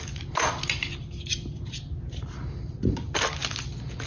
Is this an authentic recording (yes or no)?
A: yes